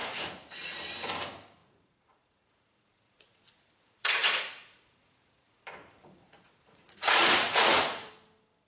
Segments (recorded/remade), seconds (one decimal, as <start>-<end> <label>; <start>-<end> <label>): 0.0-0.8 remade; 0.8-1.6 recorded; 1.6-5.6 remade; 5.6-6.2 recorded; 6.2-8.1 remade; 8.1-8.7 recorded